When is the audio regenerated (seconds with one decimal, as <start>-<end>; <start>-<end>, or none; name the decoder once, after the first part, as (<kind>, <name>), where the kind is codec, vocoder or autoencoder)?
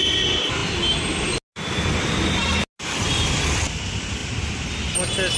none